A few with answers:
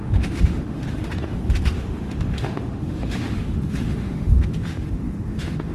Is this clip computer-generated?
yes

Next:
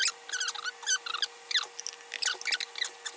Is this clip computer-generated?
no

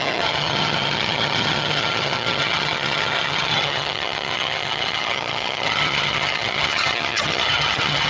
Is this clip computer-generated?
yes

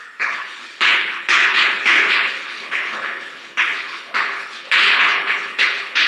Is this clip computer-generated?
yes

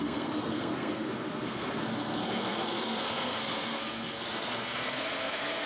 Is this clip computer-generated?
yes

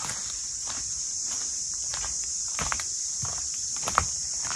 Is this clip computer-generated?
yes